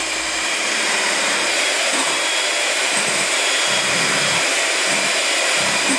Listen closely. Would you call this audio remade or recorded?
remade